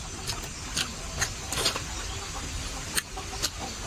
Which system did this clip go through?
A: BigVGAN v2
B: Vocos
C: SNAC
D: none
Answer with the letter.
D